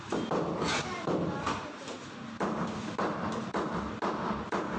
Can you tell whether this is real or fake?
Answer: real